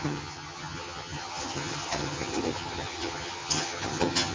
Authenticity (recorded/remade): remade